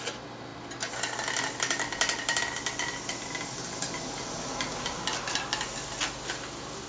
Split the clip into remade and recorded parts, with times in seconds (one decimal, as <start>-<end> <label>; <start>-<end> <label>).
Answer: 0.0-6.9 recorded

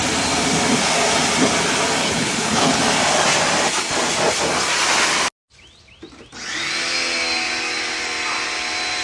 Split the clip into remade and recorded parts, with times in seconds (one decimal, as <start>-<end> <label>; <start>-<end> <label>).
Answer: 0.0-2.0 recorded; 2.0-2.8 remade; 2.8-9.0 recorded

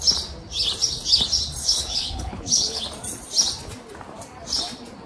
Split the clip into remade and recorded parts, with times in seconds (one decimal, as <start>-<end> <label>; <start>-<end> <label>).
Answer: 0.0-1.6 recorded; 1.6-2.8 remade; 2.8-5.1 recorded

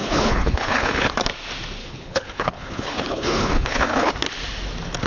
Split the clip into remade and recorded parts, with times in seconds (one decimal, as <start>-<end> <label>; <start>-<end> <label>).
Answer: 0.0-1.1 remade; 1.1-1.8 recorded; 1.8-4.1 remade; 4.1-5.1 recorded

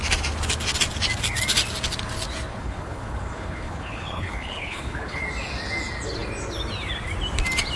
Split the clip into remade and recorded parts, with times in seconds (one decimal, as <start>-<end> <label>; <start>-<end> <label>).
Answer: 0.0-2.5 recorded; 2.5-5.2 remade; 5.2-7.8 recorded

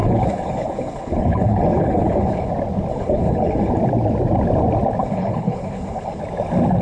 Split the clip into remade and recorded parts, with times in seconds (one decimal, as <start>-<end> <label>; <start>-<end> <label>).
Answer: 0.0-2.5 remade; 2.5-2.9 recorded; 2.9-3.7 remade; 3.7-5.0 recorded; 5.0-6.2 remade; 6.2-6.8 recorded